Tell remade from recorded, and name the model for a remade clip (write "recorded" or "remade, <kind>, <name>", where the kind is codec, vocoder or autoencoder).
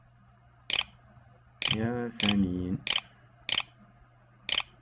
recorded